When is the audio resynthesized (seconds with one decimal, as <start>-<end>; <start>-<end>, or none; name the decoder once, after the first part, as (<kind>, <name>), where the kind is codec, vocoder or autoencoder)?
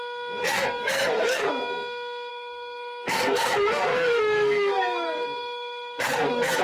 0.4-1.5 (codec, SNAC); 2.3-6.6